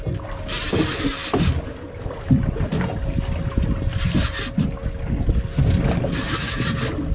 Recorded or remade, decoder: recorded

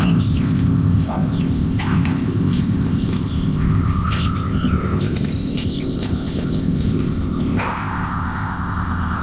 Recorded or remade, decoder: remade, codec, ZipCodec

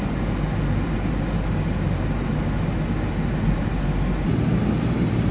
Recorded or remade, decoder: recorded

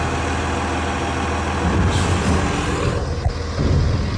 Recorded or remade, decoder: recorded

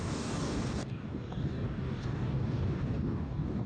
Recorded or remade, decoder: remade, codec, DAC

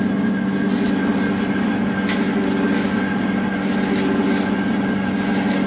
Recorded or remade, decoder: recorded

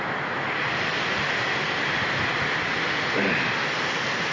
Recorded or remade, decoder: recorded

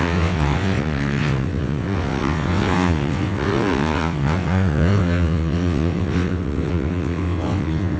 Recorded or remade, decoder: remade, vocoder, WaveNeXt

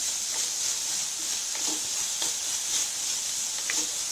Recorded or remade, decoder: recorded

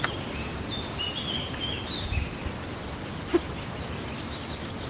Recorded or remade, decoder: recorded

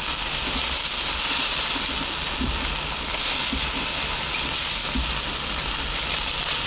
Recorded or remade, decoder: recorded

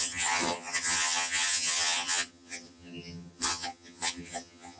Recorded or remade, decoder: remade, vocoder, HiFi-GAN